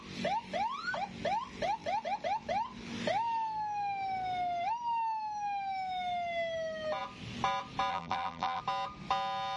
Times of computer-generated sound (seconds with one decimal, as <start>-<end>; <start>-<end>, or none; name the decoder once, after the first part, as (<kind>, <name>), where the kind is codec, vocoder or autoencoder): 7.9-8.6 (vocoder, BigVGAN v2)